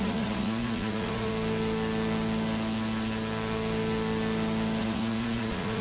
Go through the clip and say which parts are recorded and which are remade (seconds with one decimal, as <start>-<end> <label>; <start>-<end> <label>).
0.0-1.3 remade; 1.3-4.8 recorded; 4.8-5.8 remade